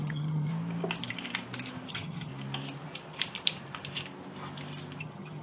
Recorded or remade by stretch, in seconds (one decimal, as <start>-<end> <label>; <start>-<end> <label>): 0.0-0.5 remade; 0.5-1.9 recorded; 1.9-2.3 remade; 2.3-5.0 recorded; 5.0-5.4 remade